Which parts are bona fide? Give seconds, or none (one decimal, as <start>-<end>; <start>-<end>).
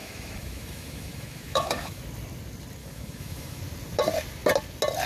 2.0-2.8; 3.6-5.1